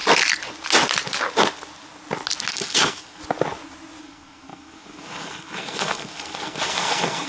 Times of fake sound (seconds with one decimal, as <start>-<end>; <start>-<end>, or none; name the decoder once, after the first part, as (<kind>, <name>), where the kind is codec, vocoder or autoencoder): 2.5-3.2 (codec, SNAC); 4.0-7.3